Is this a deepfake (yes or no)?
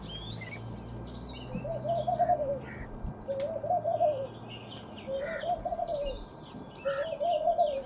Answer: no